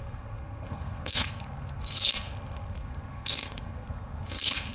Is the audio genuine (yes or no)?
no